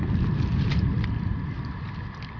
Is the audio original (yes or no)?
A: yes